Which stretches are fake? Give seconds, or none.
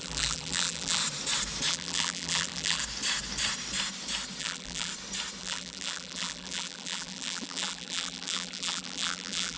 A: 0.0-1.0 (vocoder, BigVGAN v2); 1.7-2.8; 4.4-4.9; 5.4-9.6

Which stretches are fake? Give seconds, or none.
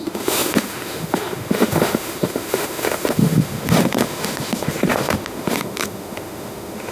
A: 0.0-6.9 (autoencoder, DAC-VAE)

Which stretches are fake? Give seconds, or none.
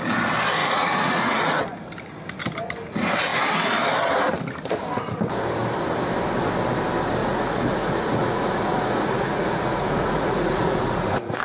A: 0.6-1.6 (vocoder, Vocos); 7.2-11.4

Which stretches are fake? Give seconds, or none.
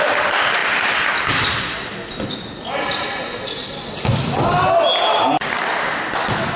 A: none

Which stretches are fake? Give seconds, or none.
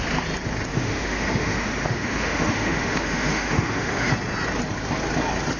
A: 0.7-4.1 (autoencoder, DAC-VAE)